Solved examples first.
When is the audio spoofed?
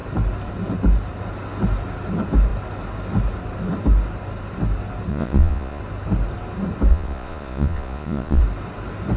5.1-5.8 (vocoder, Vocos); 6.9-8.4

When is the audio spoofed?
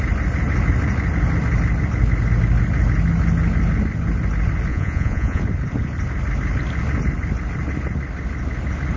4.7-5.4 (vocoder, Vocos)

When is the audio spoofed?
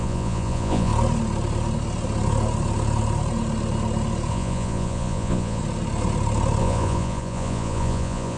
0.0-0.9 (vocoder, Vocos); 4.3-5.6; 6.6-8.4